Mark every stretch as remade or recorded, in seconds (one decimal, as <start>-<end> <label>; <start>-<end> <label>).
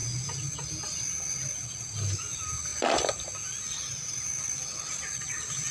0.0-5.7 recorded